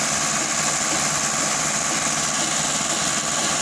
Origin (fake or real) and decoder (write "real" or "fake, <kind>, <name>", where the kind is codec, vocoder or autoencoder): real